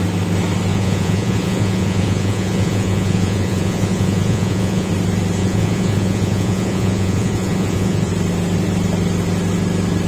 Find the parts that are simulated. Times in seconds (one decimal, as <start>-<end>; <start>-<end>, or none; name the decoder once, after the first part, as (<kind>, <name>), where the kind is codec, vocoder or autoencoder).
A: 0.7-4.9 (vocoder, Vocos); 5.4-8.1